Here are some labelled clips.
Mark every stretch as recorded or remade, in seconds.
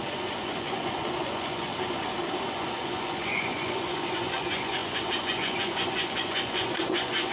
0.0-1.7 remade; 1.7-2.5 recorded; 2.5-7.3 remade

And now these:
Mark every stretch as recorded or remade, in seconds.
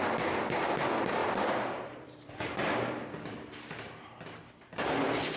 0.0-1.2 recorded; 1.2-4.4 remade; 4.4-5.4 recorded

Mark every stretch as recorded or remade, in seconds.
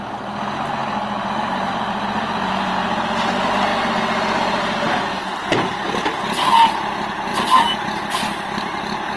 0.0-0.8 recorded; 0.8-2.7 remade; 2.7-7.3 recorded; 7.3-7.8 remade; 7.8-9.2 recorded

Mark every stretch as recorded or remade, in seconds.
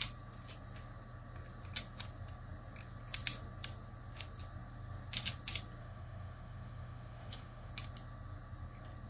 0.0-5.8 recorded; 5.8-7.7 remade; 7.7-9.1 recorded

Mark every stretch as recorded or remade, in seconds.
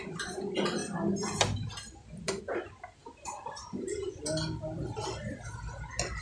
0.0-6.2 recorded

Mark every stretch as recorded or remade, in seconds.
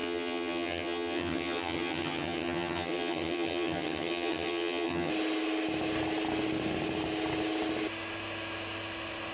0.0-5.1 remade; 5.1-9.3 recorded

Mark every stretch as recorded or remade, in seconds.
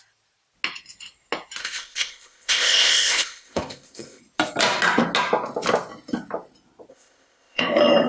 0.0-1.6 recorded; 1.6-4.2 remade; 4.2-6.9 recorded; 6.9-7.6 remade; 7.6-8.1 recorded